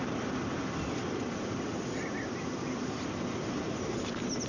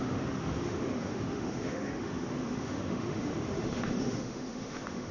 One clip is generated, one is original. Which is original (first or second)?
first